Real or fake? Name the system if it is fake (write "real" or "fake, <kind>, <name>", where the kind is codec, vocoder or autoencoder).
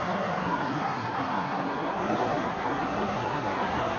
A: fake, codec, SNAC